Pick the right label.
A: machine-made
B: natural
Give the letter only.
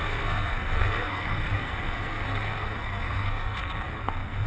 A